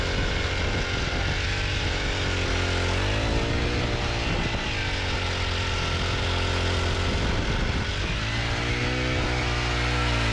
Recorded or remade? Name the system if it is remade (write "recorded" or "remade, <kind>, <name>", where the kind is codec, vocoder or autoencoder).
recorded